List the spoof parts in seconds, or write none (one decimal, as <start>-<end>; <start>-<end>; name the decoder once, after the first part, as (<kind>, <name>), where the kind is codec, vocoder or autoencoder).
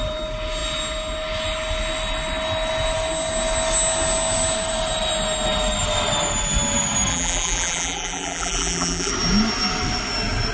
7.1-9.1 (vocoder, BigVGAN v2)